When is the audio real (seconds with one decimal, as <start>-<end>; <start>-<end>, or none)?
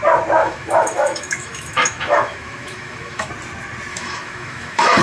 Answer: 0.0-0.4; 3.3-3.9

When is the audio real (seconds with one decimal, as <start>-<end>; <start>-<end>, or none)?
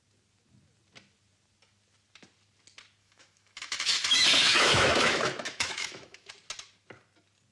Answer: 0.0-3.0; 6.3-7.5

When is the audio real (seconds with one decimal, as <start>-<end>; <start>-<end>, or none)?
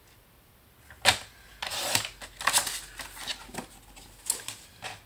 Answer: 0.0-5.1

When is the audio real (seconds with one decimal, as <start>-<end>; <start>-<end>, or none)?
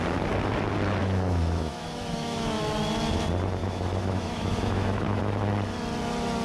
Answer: 0.0-1.0; 2.6-3.6; 5.2-6.4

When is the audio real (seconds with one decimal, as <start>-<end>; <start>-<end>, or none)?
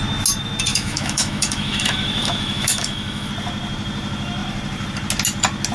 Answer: 0.0-0.7; 3.3-5.7